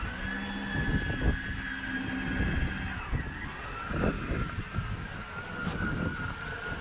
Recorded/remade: recorded